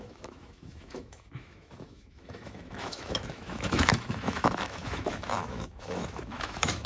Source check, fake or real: fake